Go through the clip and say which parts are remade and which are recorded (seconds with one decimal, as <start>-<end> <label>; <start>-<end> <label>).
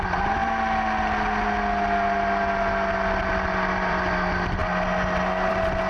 0.0-5.9 recorded